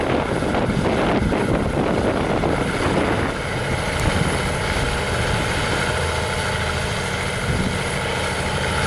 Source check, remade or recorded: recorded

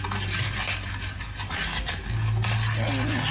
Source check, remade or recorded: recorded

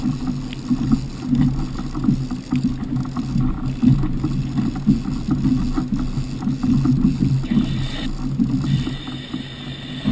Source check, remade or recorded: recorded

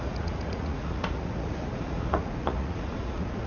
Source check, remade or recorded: remade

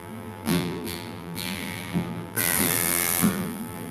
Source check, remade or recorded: remade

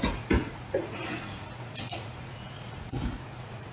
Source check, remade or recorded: remade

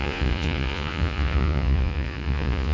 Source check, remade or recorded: remade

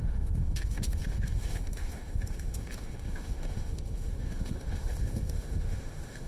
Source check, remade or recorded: remade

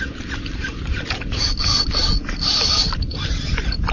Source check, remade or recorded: recorded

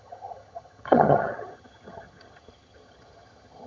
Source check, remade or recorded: remade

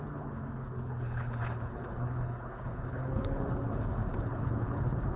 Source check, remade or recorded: remade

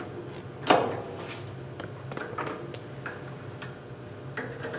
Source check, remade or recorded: recorded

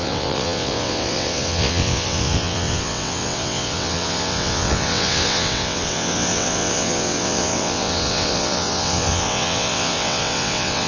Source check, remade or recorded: remade